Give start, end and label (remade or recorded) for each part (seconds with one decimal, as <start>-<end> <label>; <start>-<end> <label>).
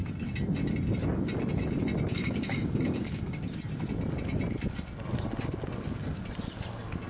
0.0-2.1 recorded; 2.1-3.5 remade; 3.5-7.1 recorded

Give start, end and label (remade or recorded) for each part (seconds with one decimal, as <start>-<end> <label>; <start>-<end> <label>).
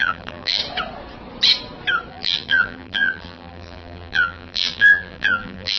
0.0-0.6 remade; 0.6-2.1 recorded; 2.1-5.8 remade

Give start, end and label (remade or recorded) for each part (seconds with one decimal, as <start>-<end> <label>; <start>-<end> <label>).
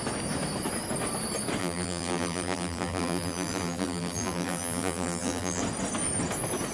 0.0-1.6 recorded; 1.6-5.6 remade; 5.6-6.7 recorded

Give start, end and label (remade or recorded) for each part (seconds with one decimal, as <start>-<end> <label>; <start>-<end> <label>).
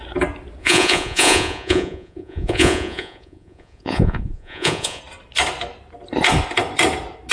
0.0-0.6 recorded; 0.6-5.0 remade; 5.0-7.3 recorded